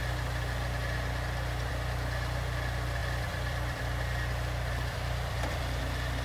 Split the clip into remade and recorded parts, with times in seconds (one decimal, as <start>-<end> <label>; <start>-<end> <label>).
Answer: 0.0-3.0 recorded; 3.0-5.8 remade; 5.8-6.2 recorded